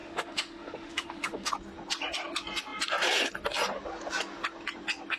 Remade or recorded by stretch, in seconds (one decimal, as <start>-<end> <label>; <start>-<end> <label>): 0.0-1.5 remade; 1.5-5.2 recorded